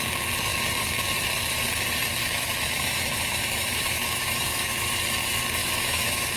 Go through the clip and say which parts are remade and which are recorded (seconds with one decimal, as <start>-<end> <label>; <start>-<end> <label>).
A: 0.0-2.2 recorded; 2.2-4.9 remade; 4.9-5.6 recorded; 5.6-6.4 remade